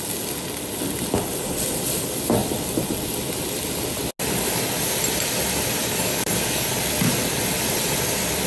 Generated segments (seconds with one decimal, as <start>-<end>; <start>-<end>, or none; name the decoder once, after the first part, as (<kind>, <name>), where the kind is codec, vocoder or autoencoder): 5.8-6.7 (codec, DAC)

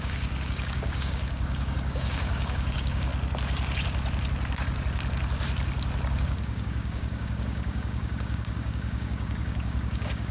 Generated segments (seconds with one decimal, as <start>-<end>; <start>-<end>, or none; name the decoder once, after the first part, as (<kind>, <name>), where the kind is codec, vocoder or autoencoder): 0.0-3.1 (codec, DAC); 6.1-10.3

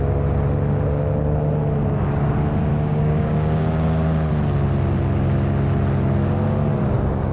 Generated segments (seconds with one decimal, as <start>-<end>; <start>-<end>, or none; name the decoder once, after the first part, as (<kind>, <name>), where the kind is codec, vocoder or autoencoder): 2.7-4.3 (codec, DAC)

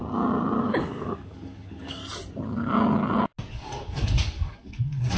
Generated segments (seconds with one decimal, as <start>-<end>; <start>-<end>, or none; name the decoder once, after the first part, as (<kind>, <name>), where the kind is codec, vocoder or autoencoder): 0.6-2.0 (codec, DAC); 3.5-5.2

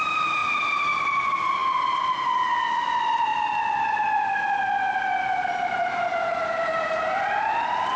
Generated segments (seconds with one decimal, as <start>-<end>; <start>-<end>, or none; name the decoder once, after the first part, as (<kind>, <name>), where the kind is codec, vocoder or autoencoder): none

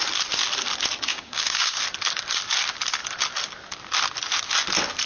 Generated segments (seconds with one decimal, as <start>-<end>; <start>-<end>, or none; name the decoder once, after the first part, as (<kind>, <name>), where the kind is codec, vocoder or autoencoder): 1.1-1.8 (codec, DAC)

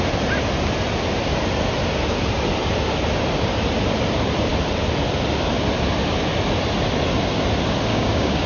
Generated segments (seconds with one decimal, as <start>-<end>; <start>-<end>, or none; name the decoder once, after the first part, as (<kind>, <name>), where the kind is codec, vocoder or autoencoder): 7.9-8.5 (codec, DAC)

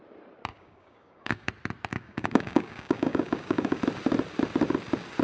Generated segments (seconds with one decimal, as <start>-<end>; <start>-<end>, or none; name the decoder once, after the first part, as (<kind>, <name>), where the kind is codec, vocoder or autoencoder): 0.5-1.5 (codec, DAC); 1.9-3.8